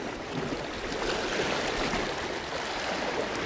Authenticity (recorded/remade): recorded